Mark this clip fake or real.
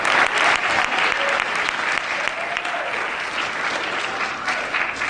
fake